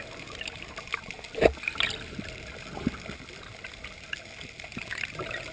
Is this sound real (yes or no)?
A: yes